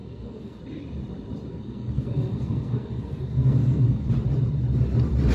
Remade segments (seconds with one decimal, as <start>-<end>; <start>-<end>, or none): 0.0-0.6; 1.5-4.1